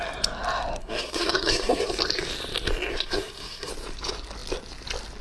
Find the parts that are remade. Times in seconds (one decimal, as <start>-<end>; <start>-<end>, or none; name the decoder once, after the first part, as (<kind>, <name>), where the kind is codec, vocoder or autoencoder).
0.8-1.9 (codec, SNAC); 2.9-3.7